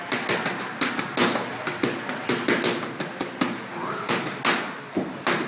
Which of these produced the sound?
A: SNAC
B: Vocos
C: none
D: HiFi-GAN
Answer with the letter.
C